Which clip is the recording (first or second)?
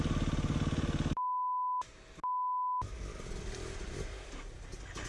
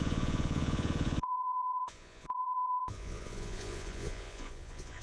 first